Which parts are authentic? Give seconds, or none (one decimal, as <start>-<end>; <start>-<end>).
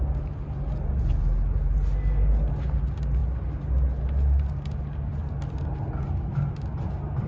0.0-7.3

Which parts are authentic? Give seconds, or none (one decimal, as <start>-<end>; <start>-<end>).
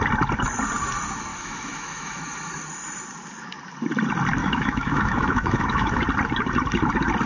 0.0-1.3; 2.2-4.4; 6.0-7.3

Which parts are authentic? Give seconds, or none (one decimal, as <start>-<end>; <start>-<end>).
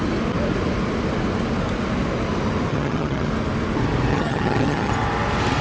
0.0-2.7; 3.3-4.1; 4.9-5.6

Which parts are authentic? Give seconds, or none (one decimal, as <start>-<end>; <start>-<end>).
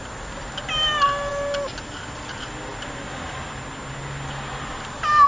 0.0-5.3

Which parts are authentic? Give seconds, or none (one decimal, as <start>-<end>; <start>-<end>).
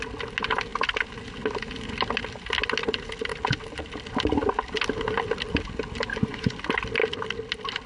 0.0-6.1; 6.6-7.9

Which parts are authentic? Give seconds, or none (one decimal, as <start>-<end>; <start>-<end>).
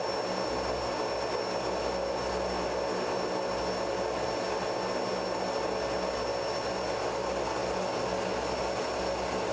0.0-9.5